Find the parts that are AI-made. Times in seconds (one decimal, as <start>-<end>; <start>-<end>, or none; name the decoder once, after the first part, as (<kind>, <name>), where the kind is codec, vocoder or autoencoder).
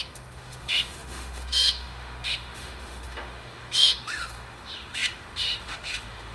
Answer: 0.0-6.3 (autoencoder, DAC-VAE)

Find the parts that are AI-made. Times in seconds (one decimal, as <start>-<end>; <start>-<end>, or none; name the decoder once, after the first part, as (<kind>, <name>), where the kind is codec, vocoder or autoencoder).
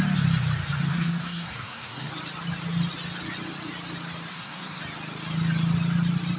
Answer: 0.9-2.1 (codec, SNAC); 4.3-4.8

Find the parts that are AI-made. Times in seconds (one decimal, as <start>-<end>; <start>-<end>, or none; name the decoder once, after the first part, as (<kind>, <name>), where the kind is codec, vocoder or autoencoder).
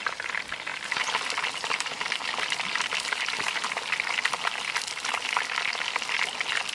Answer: none